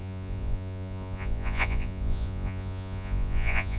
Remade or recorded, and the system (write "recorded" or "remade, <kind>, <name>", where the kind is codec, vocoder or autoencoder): remade, vocoder, Vocos